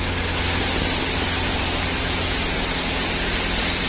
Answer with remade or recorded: recorded